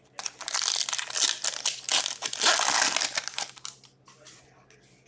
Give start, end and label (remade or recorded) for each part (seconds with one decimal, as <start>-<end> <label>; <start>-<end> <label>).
0.0-5.1 recorded